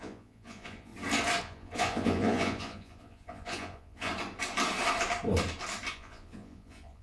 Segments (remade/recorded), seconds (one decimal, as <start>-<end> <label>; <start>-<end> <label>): 0.0-0.9 remade; 0.9-1.4 recorded; 1.4-4.1 remade; 4.1-5.9 recorded; 5.9-7.0 remade